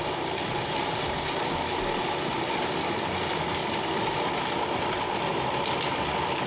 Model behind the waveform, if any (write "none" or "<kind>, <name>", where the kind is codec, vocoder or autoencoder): none